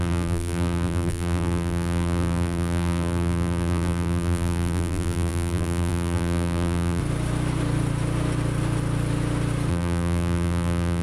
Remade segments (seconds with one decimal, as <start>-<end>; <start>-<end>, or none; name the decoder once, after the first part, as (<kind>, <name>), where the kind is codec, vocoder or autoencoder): 0.0-7.0 (vocoder, BigVGAN v2); 9.7-11.0